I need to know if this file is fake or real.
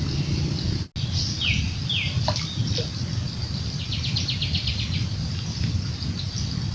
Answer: real